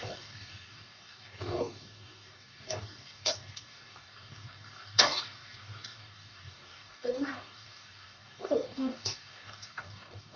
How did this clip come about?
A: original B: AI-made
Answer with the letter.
B